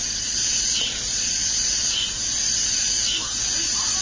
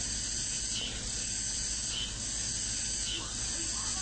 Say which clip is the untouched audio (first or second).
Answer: second